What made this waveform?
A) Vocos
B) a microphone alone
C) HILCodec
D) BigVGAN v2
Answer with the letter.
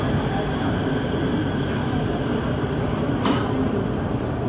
D